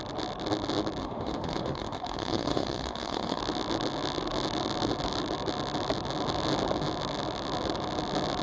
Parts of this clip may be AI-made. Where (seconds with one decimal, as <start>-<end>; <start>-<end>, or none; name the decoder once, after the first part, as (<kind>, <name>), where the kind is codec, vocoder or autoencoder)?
1.0-3.4 (autoencoder, DAC-VAE)